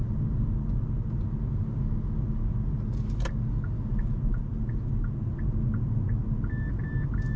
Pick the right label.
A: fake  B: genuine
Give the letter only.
B